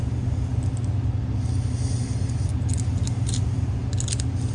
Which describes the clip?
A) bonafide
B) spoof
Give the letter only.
A